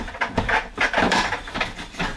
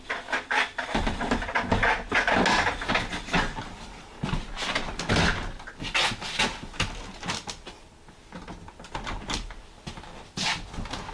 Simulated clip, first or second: first